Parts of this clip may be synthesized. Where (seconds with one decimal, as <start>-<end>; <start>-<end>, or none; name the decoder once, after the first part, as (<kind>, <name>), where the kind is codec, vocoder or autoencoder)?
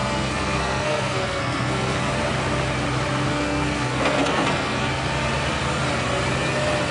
0.0-2.1 (codec, SNAC); 3.3-4.9